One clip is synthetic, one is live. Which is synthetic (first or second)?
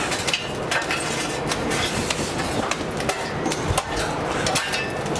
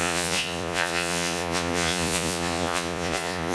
second